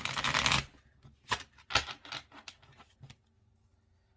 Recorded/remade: recorded